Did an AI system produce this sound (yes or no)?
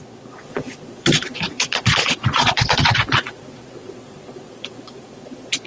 yes